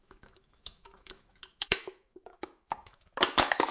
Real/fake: fake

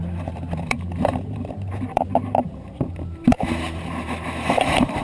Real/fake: fake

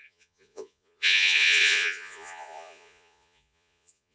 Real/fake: fake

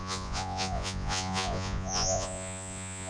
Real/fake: fake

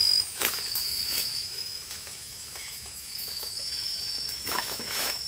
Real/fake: fake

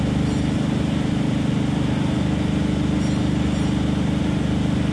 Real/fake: real